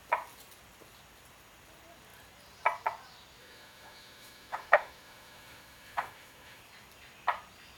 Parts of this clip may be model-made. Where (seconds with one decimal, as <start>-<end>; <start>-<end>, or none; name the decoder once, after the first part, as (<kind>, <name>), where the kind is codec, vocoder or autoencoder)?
3.4-6.6 (autoencoder, DAC-VAE)